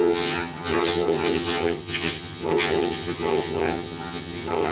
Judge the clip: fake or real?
fake